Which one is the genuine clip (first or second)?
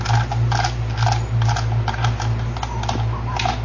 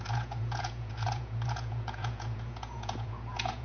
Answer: first